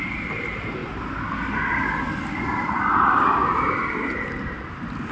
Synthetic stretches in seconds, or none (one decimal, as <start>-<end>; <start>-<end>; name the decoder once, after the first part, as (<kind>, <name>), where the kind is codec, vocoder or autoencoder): none